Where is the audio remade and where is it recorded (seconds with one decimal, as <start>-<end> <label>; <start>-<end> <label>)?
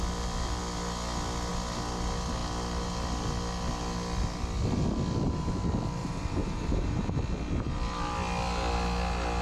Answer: 0.0-6.0 recorded; 6.0-7.2 remade; 7.2-9.4 recorded